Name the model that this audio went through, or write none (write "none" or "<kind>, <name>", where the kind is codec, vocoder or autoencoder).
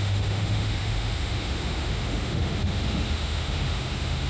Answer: autoencoder, DAC-VAE